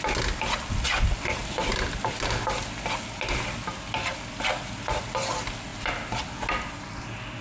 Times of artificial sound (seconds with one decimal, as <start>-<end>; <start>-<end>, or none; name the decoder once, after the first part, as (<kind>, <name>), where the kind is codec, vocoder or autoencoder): none